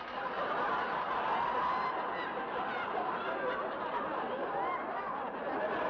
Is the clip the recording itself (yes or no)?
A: yes